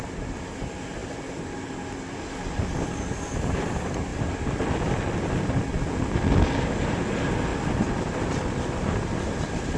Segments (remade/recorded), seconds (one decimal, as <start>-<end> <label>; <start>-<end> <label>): 0.0-9.8 recorded